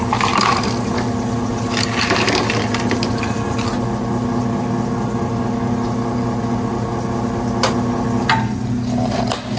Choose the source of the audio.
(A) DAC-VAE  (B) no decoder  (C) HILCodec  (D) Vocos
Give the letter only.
B